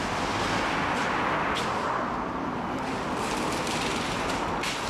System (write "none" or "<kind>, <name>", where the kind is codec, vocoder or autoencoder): none